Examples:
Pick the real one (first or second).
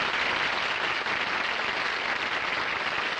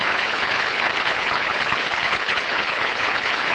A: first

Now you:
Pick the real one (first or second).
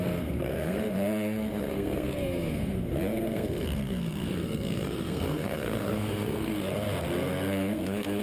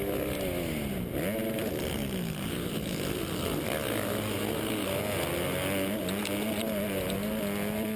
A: second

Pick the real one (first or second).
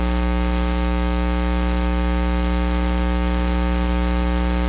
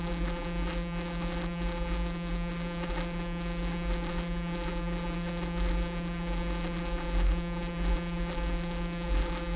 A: first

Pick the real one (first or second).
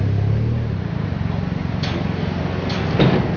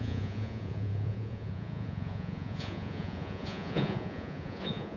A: first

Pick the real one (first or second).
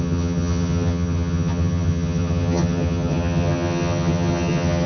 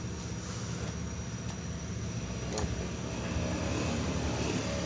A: second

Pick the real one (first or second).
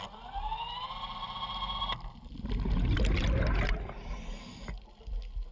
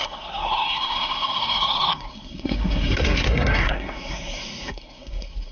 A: first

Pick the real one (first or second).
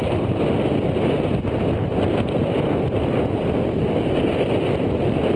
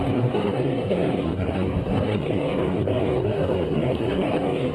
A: first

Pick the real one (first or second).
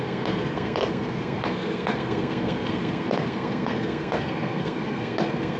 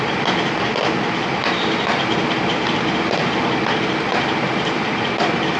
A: second